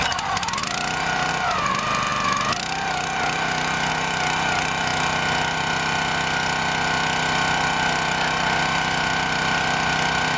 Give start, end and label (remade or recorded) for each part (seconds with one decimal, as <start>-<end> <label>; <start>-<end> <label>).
0.0-10.4 recorded